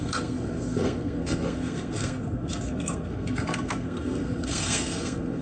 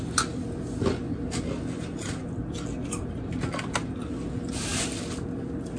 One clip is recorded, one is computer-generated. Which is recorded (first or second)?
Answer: second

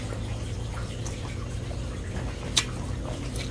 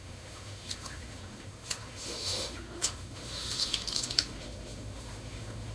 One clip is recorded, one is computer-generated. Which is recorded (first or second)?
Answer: first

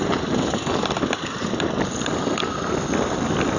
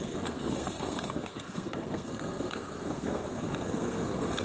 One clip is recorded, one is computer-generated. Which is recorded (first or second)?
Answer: first